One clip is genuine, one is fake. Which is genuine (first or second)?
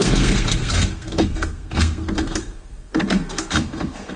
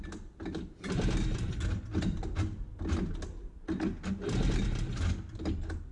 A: second